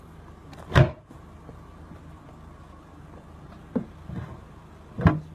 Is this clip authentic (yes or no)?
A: yes